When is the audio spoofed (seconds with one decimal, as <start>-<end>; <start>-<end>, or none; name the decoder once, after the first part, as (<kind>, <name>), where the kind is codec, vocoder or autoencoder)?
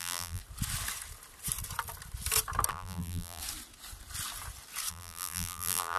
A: 0.0-0.4 (vocoder, BigVGAN v2); 2.7-3.4; 4.9-6.0